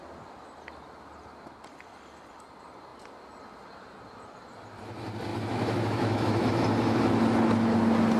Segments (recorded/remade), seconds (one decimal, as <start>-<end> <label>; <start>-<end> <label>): 0.0-5.3 recorded; 5.3-6.5 remade; 6.5-8.2 recorded